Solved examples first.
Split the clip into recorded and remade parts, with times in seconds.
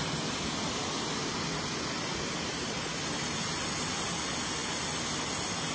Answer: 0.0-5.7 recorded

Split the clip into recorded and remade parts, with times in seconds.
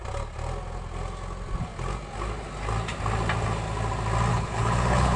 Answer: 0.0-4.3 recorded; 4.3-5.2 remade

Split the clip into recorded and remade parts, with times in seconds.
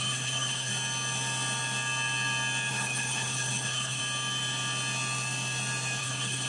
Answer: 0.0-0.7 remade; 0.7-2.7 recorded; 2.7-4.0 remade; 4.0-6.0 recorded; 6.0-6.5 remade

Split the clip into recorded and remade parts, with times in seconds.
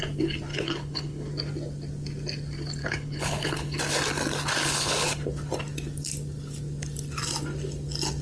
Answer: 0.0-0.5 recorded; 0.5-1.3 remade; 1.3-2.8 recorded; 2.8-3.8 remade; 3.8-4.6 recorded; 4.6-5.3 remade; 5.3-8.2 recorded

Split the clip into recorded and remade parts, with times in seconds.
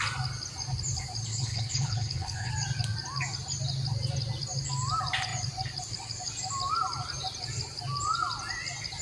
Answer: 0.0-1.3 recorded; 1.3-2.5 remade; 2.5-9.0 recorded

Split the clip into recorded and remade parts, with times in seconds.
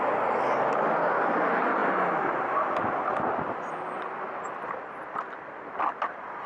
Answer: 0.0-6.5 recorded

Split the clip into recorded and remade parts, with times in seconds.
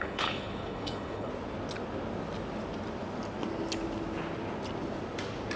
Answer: 0.0-1.3 remade; 1.3-5.6 recorded